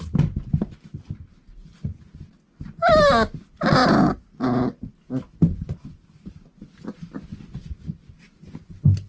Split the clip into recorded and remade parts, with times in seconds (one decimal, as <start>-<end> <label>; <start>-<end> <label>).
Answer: 0.0-3.8 recorded; 3.8-4.9 remade; 4.9-9.1 recorded